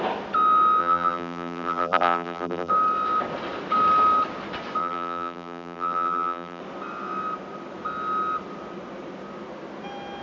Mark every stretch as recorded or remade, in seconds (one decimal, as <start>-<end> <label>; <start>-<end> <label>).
0.0-0.8 recorded; 0.8-2.7 remade; 2.7-4.8 recorded; 4.8-6.6 remade; 6.6-10.2 recorded